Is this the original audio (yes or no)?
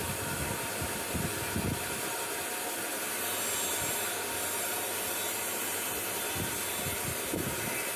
yes